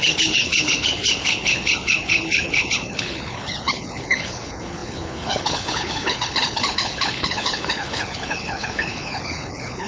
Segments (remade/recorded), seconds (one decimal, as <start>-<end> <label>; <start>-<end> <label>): 0.0-9.9 remade